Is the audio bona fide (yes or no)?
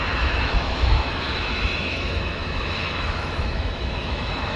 no